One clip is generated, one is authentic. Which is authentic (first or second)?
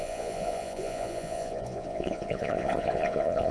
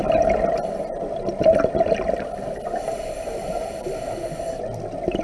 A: second